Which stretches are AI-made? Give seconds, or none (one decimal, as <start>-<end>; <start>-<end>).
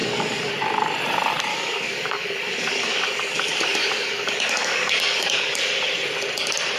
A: 0.0-0.5; 1.5-5.6